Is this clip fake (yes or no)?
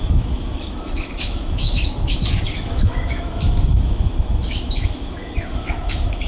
yes